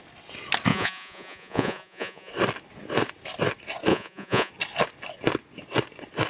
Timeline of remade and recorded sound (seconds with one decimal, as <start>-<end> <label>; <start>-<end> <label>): 0.0-0.7 recorded; 0.7-2.3 remade; 2.3-3.9 recorded; 3.9-4.5 remade; 4.5-6.3 recorded

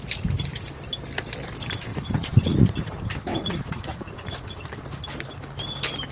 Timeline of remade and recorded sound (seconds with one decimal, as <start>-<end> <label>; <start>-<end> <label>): 0.0-1.9 recorded; 1.9-2.7 remade; 2.7-3.3 recorded; 3.3-4.6 remade; 4.6-6.1 recorded

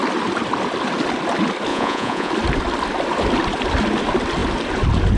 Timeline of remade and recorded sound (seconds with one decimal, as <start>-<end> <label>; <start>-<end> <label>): 0.0-1.7 recorded; 1.7-2.3 remade; 2.3-5.2 recorded

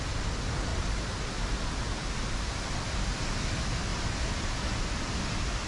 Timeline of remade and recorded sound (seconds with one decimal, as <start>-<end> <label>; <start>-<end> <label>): 0.0-5.7 recorded

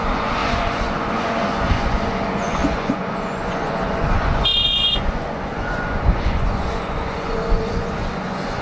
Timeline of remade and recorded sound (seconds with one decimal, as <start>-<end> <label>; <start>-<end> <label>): 0.0-8.6 remade